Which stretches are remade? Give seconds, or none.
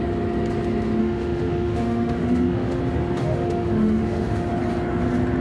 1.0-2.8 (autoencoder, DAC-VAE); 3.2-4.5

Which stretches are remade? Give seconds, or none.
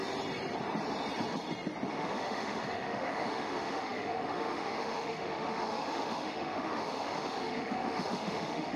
1.9-8.8 (autoencoder, DAC-VAE)